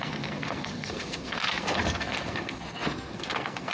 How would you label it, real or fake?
fake